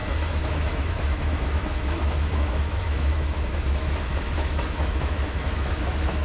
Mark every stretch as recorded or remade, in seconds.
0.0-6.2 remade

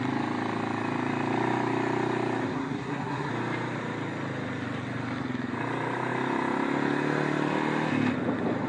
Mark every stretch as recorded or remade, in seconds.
0.0-2.5 recorded; 2.5-3.3 remade; 3.3-8.7 recorded

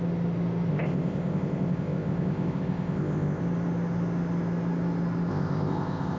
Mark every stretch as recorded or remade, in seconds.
0.0-0.7 recorded; 0.7-3.4 remade; 3.4-5.3 recorded; 5.3-6.2 remade